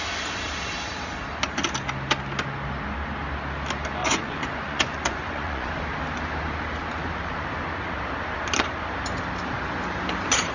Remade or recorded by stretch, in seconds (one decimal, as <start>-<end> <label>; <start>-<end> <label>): 0.0-4.0 recorded; 4.0-5.7 remade; 5.7-10.5 recorded